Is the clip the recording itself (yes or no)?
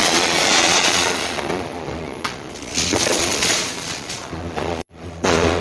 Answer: no